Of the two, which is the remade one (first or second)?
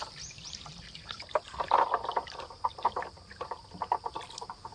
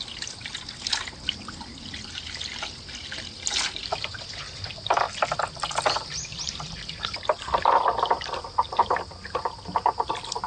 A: first